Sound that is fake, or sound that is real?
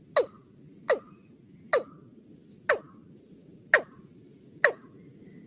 real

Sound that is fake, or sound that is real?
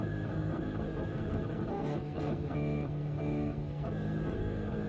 fake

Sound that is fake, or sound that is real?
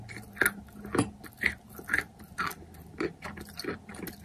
real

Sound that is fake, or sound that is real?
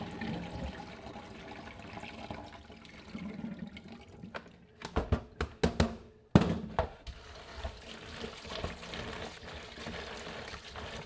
real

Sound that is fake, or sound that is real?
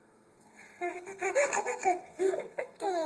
fake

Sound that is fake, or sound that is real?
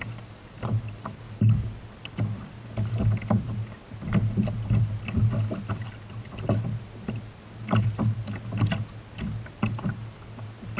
real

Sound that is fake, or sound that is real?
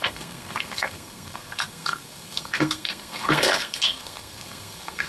fake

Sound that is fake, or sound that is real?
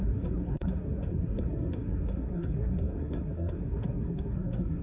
fake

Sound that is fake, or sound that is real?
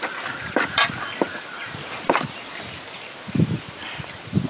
real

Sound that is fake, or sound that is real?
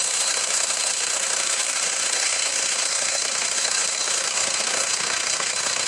fake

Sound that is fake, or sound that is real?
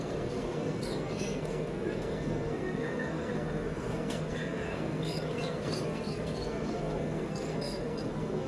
fake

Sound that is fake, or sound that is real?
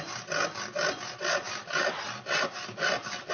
real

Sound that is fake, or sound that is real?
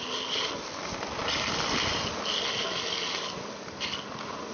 real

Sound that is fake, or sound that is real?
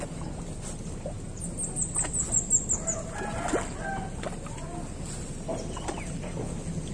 real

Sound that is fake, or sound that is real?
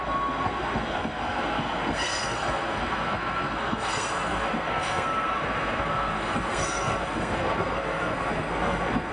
fake